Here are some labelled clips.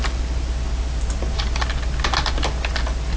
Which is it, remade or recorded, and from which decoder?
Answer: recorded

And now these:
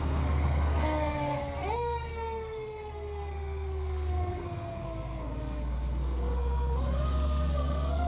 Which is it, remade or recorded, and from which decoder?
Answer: remade, codec, SNAC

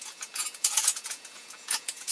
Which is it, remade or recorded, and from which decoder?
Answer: remade, vocoder, Vocos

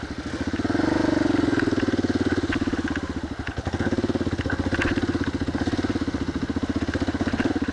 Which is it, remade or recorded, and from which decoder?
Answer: recorded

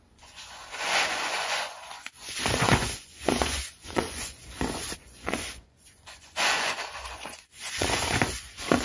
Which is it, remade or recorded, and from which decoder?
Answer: remade, vocoder, Vocos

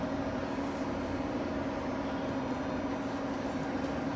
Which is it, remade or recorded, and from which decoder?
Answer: recorded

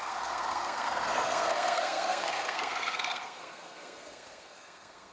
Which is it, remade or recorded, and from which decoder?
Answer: remade, codec, SNAC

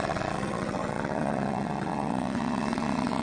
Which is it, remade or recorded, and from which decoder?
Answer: remade, vocoder, WaveNeXt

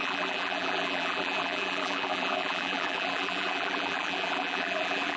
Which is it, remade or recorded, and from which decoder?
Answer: remade, vocoder, BigVGAN v2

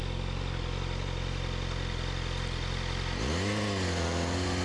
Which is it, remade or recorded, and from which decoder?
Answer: recorded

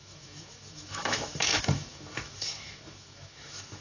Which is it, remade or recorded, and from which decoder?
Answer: remade, autoencoder, DAC-VAE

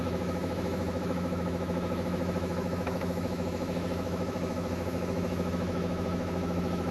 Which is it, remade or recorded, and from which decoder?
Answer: remade, autoencoder, DAC-VAE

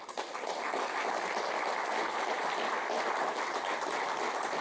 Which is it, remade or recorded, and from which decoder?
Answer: recorded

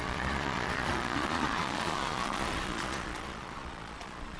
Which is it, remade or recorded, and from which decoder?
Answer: remade, vocoder, Vocos